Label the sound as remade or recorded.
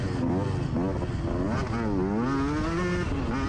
recorded